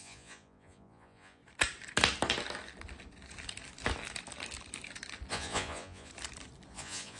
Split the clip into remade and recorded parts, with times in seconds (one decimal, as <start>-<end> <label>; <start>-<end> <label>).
0.0-1.4 remade; 1.4-5.3 recorded; 5.3-6.1 remade; 6.1-6.7 recorded; 6.7-7.2 remade